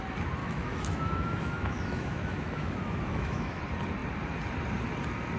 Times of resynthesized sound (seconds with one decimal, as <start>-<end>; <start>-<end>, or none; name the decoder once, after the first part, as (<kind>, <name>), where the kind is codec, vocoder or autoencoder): 0.4-3.6 (autoencoder, DAC-VAE)